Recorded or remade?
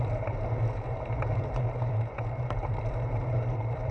remade